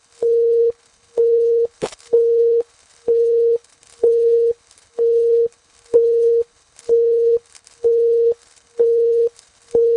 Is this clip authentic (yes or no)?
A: no